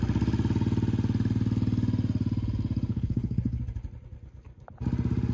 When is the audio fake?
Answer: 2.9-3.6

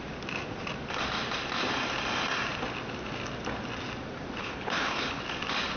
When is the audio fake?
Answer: 4.4-5.2

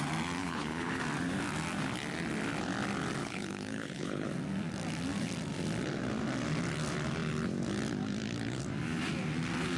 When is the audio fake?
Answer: 0.4-1.0; 3.2-4.3

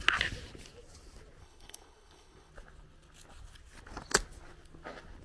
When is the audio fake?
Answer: 1.4-2.5